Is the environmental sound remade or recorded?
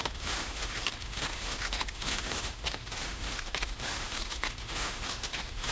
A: remade